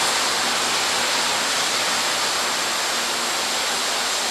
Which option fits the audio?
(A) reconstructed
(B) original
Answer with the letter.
B